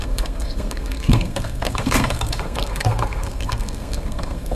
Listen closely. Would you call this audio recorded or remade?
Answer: remade